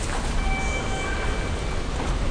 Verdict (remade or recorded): recorded